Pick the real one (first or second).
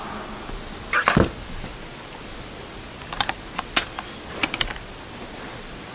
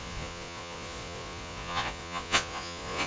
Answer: first